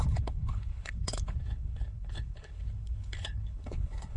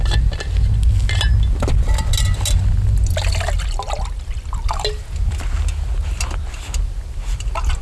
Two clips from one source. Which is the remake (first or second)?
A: first